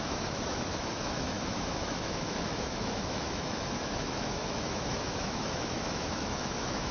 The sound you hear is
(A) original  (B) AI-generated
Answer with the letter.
B